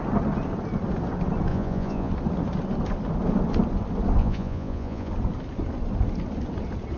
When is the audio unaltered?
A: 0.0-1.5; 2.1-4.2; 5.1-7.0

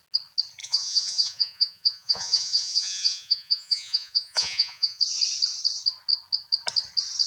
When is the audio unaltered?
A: 0.0-0.6; 5.0-7.3

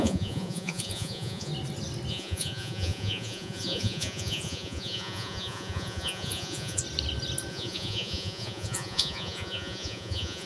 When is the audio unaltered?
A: 1.5-2.1; 6.8-7.5

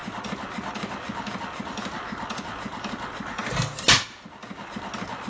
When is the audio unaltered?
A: 0.0-5.3

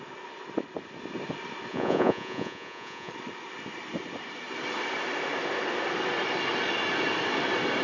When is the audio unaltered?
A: 0.0-1.7; 3.1-7.8